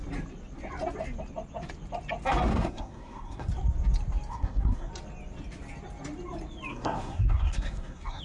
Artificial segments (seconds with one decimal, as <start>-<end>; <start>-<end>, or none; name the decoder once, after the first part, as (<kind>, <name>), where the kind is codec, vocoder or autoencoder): 2.5-3.5 (codec, SNAC); 4.3-4.9; 6.7-8.2